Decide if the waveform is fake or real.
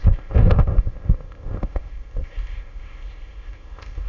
fake